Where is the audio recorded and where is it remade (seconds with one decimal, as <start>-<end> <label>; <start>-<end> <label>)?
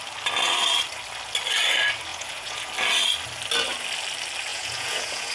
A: 0.0-2.1 recorded; 2.1-2.7 remade; 2.7-4.5 recorded; 4.5-5.3 remade